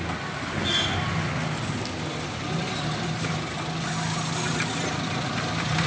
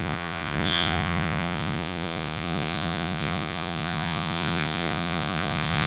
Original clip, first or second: first